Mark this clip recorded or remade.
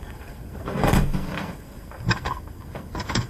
remade